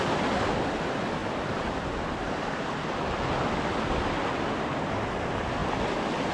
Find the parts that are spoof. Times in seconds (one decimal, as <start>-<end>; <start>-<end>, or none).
none